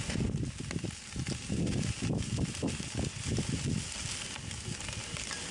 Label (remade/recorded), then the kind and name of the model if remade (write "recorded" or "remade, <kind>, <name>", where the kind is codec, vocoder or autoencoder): recorded